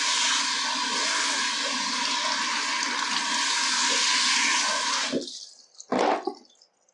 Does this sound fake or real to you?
real